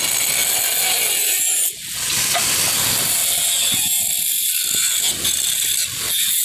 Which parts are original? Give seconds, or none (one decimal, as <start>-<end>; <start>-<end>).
0.0-6.4